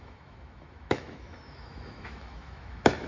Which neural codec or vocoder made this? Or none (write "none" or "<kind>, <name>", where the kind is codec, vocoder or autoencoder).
autoencoder, DAC-VAE